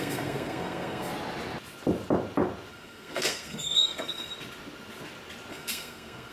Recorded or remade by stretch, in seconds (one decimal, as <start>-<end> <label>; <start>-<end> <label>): 0.0-1.1 remade; 1.1-2.7 recorded; 2.7-4.3 remade; 4.3-5.5 recorded; 5.5-6.3 remade